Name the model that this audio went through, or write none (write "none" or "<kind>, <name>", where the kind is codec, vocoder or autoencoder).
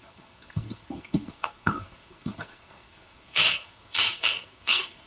codec, SNAC